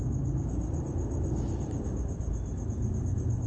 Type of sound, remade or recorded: recorded